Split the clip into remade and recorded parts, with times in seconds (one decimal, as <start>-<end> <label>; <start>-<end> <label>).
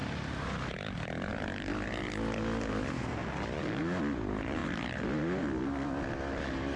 0.0-6.8 recorded